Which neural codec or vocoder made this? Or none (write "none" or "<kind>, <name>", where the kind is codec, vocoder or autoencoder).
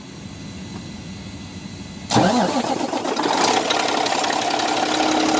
none